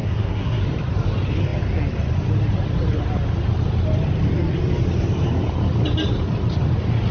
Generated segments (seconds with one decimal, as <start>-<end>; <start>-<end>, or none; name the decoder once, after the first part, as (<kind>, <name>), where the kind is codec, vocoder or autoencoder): 0.0-0.6 (codec, SNAC)